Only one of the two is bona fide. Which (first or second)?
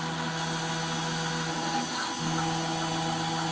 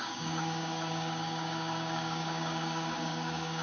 first